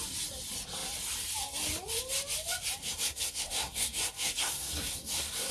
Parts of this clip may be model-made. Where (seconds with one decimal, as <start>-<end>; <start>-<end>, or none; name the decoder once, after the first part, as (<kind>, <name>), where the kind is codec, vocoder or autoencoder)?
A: 2.8-5.5 (codec, SNAC)